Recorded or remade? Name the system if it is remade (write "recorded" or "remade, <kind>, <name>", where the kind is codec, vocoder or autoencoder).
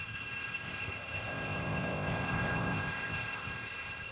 remade, codec, ZipCodec